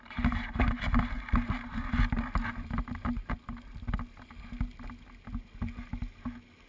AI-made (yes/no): no